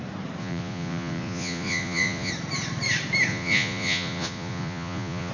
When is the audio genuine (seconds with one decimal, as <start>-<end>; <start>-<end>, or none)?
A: 0.0-0.4; 2.3-3.3

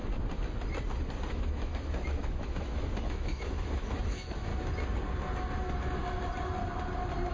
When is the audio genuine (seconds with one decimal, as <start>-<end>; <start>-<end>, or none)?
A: 0.0-1.3; 4.5-7.3

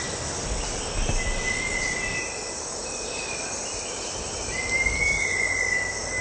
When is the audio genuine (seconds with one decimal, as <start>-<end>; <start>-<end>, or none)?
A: 0.0-2.8; 5.0-6.2

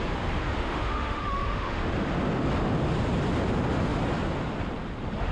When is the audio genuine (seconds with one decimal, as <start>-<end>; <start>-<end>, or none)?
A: 0.0-0.4; 1.8-5.3

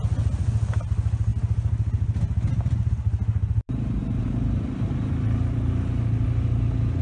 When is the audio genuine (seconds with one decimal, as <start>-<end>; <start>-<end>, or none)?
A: 0.0-4.0; 4.6-7.0